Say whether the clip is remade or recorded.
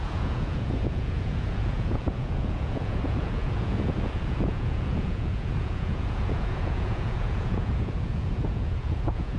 remade